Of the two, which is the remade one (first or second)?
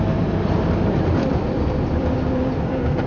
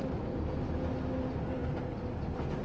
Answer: first